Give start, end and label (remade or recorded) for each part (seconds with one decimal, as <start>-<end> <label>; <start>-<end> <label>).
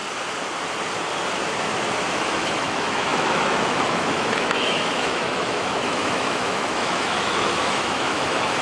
0.0-2.1 recorded; 2.1-8.6 remade